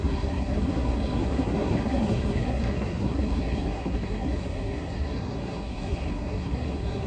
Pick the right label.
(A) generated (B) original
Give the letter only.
A